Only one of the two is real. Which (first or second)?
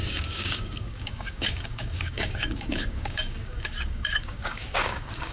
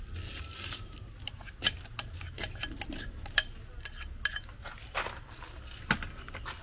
second